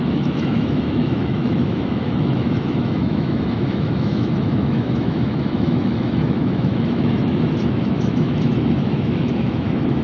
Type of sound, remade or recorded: remade